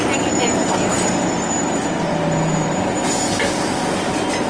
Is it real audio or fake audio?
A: real